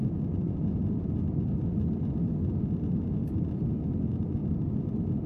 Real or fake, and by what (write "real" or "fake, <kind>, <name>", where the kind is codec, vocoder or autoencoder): real